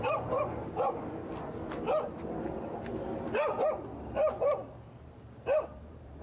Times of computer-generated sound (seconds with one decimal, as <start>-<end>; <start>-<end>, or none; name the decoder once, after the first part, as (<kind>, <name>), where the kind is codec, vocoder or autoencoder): 0.0-0.6 (vocoder, BigVGAN v2); 4.0-6.2